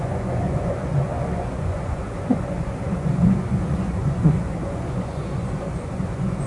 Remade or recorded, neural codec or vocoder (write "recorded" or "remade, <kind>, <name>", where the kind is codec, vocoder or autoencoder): remade, vocoder, Vocos